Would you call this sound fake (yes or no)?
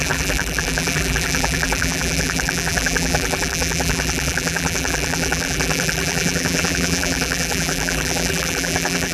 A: yes